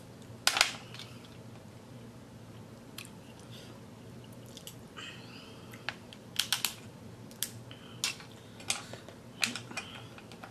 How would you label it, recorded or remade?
recorded